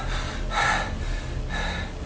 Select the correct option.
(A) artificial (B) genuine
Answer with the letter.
B